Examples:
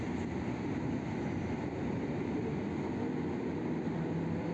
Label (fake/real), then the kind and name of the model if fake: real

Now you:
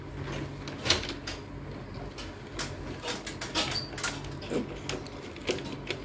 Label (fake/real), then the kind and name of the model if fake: real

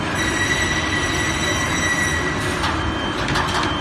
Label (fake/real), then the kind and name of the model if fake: fake, vocoder, BigVGAN v2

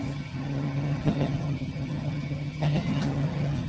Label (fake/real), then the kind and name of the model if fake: fake, vocoder, HiFi-GAN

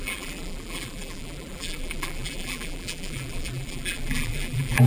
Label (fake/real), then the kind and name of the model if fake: fake, vocoder, BigVGAN v2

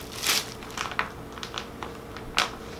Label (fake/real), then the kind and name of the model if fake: real